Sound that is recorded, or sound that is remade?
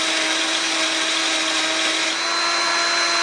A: recorded